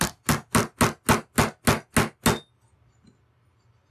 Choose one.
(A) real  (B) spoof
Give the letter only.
A